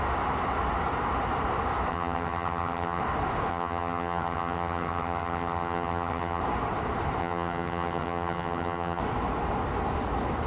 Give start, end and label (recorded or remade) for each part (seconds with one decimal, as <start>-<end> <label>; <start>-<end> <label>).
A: 0.0-1.9 recorded; 1.9-3.0 remade; 3.0-3.5 recorded; 3.5-6.4 remade; 6.4-7.2 recorded; 7.2-9.0 remade; 9.0-10.5 recorded

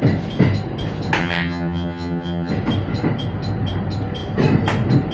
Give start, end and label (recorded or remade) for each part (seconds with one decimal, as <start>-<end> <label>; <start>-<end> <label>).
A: 0.0-1.2 recorded; 1.2-2.5 remade; 2.5-5.1 recorded

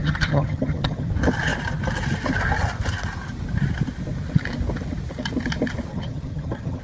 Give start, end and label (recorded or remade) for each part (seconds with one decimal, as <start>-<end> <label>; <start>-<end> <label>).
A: 0.0-1.1 remade; 1.1-5.9 recorded; 5.9-6.8 remade

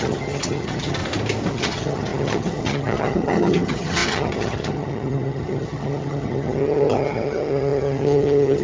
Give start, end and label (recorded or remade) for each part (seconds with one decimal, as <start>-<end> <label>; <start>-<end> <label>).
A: 0.0-1.0 remade; 1.0-1.5 recorded; 1.5-8.6 remade

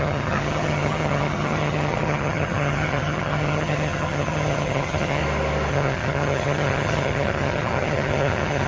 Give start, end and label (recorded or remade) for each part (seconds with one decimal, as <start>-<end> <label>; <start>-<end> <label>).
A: 0.0-5.2 remade; 5.2-5.7 recorded; 5.7-8.7 remade

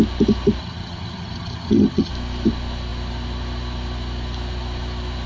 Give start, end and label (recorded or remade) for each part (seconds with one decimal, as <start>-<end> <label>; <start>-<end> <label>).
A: 0.0-0.6 recorded; 0.6-2.1 remade; 2.1-5.3 recorded

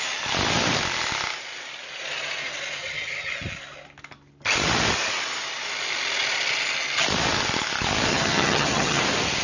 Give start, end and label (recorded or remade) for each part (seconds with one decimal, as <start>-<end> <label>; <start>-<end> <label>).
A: 0.0-2.8 recorded; 2.8-3.3 remade; 3.3-8.1 recorded; 8.1-9.0 remade; 9.0-9.4 recorded